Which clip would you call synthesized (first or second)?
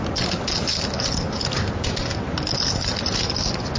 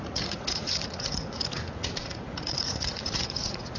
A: second